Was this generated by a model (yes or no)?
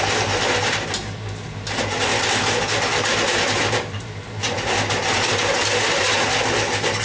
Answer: no